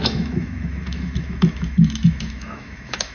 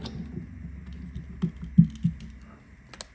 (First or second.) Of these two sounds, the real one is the second